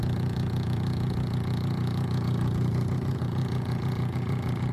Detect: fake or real fake